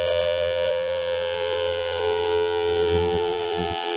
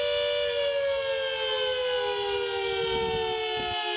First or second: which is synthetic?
first